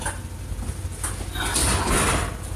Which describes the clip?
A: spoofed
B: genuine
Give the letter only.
B